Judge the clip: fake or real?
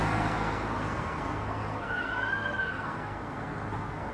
fake